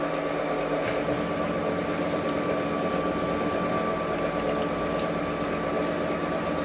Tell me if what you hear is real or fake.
real